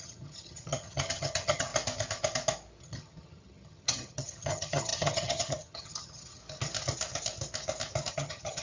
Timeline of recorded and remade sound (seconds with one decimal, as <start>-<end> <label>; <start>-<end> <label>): 0.0-1.7 remade; 1.7-2.8 recorded; 2.8-6.4 remade; 6.4-8.1 recorded; 8.1-8.6 remade